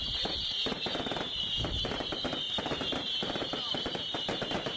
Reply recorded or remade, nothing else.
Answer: remade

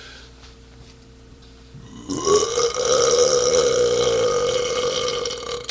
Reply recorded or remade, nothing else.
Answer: remade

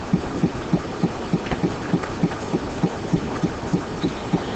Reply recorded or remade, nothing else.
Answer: remade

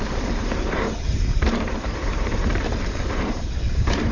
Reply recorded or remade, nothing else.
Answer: remade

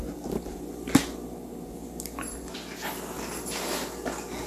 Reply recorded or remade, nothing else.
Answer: recorded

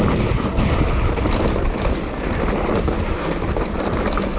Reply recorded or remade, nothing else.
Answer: recorded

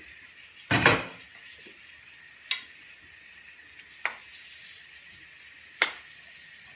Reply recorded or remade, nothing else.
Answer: recorded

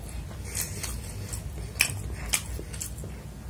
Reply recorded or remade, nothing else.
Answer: recorded